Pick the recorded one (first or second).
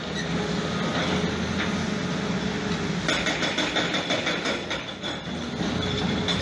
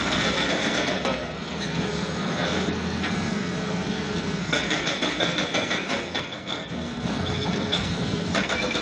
first